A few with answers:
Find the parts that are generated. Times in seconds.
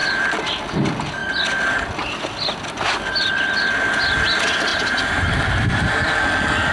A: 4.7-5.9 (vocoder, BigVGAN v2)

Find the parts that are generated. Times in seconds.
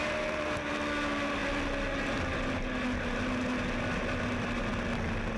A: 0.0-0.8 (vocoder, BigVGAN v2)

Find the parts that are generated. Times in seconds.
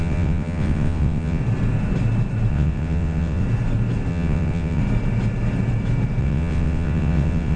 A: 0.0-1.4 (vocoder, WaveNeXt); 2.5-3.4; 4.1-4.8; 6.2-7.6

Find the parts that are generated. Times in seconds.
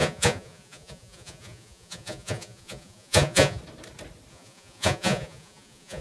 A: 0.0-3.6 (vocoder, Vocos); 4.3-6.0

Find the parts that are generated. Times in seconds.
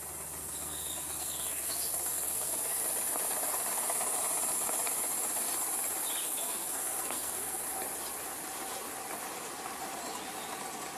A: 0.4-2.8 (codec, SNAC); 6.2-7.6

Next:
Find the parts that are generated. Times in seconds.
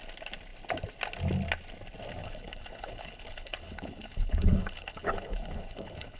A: 2.2-6.2 (codec, HILCodec)